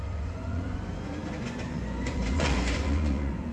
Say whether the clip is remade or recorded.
remade